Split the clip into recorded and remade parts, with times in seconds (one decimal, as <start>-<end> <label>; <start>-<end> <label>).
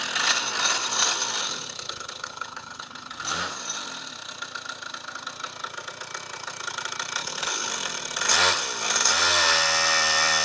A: 0.0-1.4 recorded; 1.4-3.2 remade; 3.2-7.2 recorded; 7.2-7.7 remade; 7.7-10.4 recorded